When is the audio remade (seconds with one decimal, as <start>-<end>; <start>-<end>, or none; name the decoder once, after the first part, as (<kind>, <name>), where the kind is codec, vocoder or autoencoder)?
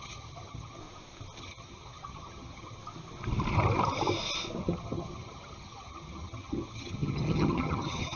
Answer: 0.0-0.8 (vocoder, HiFi-GAN); 1.4-2.8; 4.6-8.2